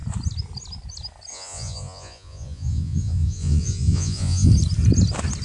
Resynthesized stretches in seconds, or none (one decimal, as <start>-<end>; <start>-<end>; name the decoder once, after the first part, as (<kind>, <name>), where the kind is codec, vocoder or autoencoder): 1.3-4.5 (vocoder, Vocos)